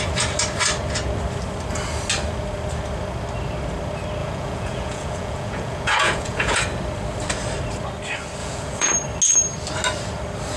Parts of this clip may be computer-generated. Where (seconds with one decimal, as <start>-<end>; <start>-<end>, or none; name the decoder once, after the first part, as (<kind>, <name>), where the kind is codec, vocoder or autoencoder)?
4.2-6.6 (vocoder, Vocos); 8.4-8.9